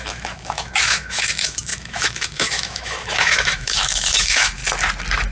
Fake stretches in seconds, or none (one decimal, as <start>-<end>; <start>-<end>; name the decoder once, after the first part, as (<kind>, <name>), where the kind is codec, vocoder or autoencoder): 0.0-4.6 (autoencoder, DAC-VAE)